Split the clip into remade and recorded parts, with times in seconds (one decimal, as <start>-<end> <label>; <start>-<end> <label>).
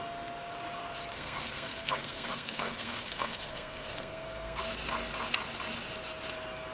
0.0-1.1 recorded; 1.1-4.6 remade; 4.6-6.7 recorded